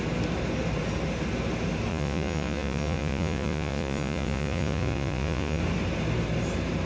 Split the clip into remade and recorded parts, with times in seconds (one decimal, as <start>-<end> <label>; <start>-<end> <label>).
0.0-1.9 recorded; 1.9-5.6 remade; 5.6-6.9 recorded